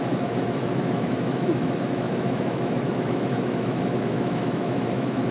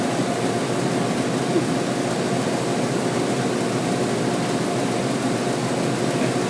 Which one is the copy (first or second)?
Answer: first